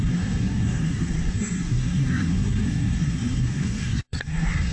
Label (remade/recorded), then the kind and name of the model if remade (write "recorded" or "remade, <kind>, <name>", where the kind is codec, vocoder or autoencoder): remade, codec, SNAC